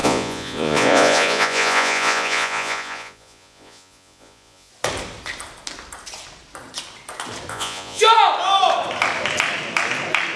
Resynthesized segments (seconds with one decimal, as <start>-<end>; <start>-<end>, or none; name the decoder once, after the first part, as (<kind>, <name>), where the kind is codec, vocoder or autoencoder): 0.0-4.7 (vocoder, Vocos); 7.5-8.0

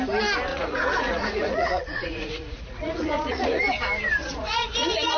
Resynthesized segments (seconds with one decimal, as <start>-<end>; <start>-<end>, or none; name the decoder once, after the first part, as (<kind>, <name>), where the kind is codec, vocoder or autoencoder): 0.5-3.6 (vocoder, Vocos); 4.2-5.2

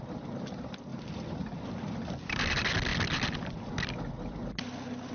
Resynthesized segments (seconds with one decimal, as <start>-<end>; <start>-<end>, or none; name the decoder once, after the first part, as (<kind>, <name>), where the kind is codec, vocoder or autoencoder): none